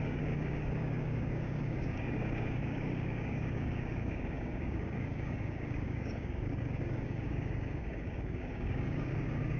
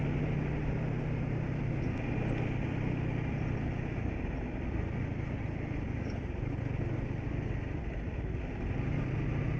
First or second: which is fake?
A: first